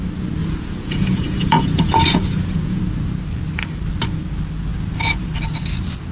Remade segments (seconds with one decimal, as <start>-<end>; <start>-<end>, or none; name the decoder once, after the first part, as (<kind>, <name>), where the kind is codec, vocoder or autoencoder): 0.4-2.8 (vocoder, Vocos)